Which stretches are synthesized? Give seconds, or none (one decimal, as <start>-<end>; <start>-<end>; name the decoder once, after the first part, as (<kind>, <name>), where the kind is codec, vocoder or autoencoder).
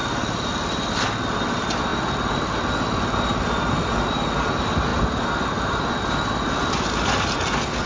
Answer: none